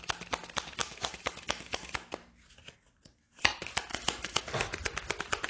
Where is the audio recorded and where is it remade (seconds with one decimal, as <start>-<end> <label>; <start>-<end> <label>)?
0.0-0.8 recorded; 0.8-2.1 remade; 2.1-3.9 recorded; 3.9-4.4 remade; 4.4-5.5 recorded

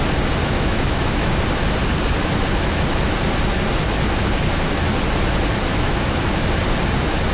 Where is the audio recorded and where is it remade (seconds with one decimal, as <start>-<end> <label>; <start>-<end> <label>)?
0.0-0.4 recorded; 0.4-1.4 remade; 1.4-5.7 recorded; 5.7-6.3 remade; 6.3-7.3 recorded

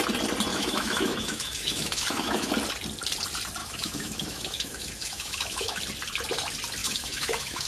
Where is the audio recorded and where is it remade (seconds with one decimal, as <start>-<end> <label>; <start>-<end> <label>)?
0.0-0.5 recorded; 0.5-2.5 remade; 2.5-3.6 recorded; 3.6-5.8 remade; 5.8-6.8 recorded; 6.8-7.7 remade

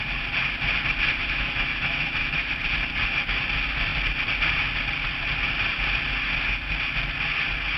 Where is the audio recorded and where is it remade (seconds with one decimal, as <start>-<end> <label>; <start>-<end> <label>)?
0.0-1.2 recorded; 1.2-2.5 remade; 2.5-7.8 recorded

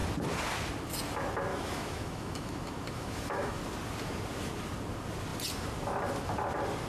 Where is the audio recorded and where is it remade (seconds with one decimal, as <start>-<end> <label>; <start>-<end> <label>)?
0.0-1.5 recorded; 1.5-3.6 remade; 3.6-6.9 recorded